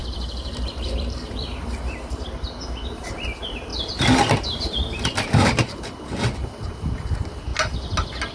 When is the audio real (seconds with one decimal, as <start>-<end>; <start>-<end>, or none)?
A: 2.6-3.7; 7.1-8.3